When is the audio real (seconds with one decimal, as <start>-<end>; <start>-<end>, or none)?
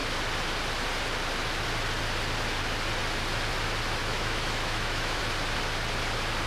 0.0-4.0; 5.2-6.5